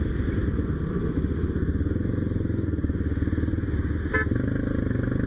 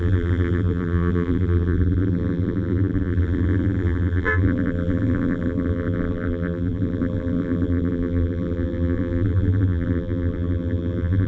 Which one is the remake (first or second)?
second